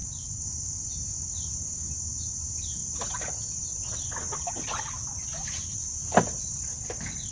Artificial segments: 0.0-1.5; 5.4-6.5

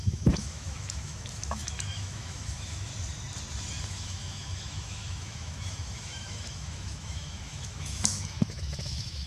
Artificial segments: 0.0-2.9; 3.8-9.3

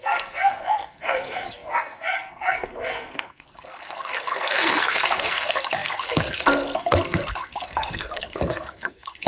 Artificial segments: 0.0-9.3

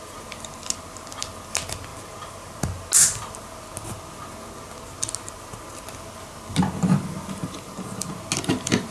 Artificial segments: none

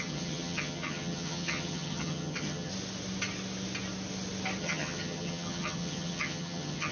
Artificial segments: 0.0-2.7; 4.6-6.9

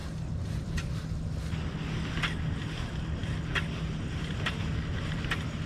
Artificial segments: none